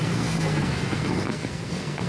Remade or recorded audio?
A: remade